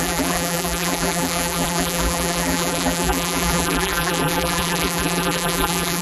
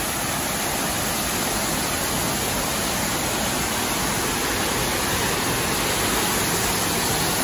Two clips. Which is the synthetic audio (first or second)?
first